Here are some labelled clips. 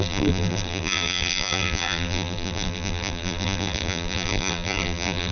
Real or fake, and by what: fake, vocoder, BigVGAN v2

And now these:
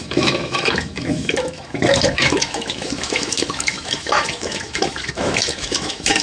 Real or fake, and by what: fake, autoencoder, DAC-VAE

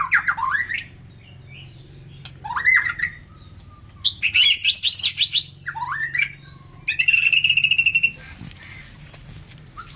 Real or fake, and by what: real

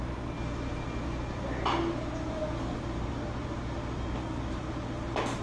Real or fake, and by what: real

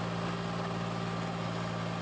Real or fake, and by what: real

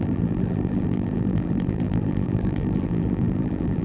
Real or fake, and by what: fake, vocoder, BigVGAN v2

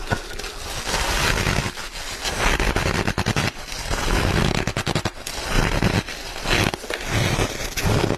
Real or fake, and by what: real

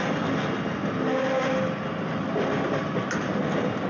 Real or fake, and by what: real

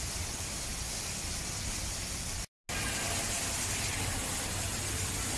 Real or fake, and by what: real